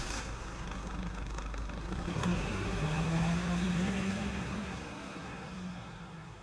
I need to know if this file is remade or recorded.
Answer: remade